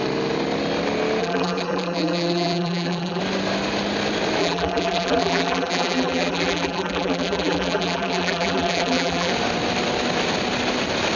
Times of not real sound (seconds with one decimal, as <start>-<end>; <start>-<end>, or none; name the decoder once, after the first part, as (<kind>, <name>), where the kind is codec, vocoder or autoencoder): 1.2-3.2 (vocoder, BigVGAN v2); 4.4-9.3